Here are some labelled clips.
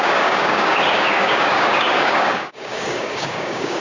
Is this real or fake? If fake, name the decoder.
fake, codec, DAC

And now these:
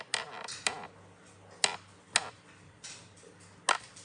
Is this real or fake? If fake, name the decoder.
real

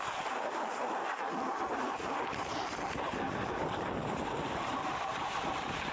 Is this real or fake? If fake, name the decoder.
real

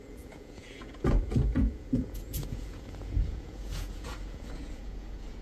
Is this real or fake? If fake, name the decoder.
fake, vocoder, Vocos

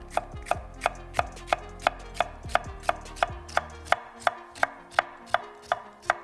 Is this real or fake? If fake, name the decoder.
real